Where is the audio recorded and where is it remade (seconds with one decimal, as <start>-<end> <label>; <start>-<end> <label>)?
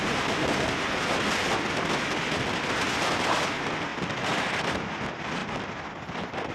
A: 0.0-2.5 recorded; 2.5-3.9 remade; 3.9-4.4 recorded; 4.4-5.4 remade; 5.4-6.1 recorded; 6.1-6.5 remade